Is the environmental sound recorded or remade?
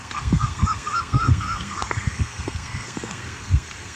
remade